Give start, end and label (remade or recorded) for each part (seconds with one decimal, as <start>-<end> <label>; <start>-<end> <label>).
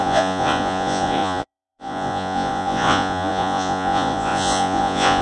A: 0.0-5.2 remade